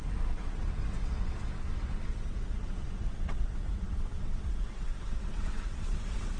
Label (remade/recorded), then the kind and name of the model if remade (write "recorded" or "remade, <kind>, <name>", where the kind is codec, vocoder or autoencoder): remade, vocoder, WaveNeXt